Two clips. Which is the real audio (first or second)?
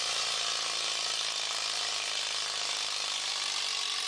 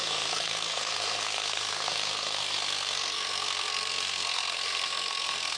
first